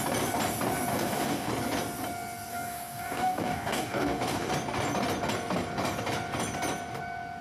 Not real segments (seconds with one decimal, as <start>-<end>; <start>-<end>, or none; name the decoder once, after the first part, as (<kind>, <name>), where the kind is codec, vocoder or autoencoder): 0.9-1.5 (codec, DAC); 2.5-4.5